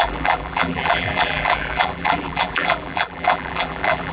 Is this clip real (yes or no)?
no